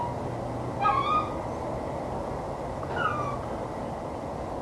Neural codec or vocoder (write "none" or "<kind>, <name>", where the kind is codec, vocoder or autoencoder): none